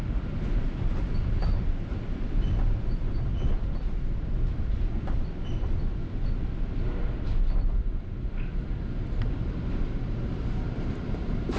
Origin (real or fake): fake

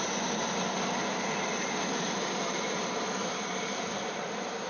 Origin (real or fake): fake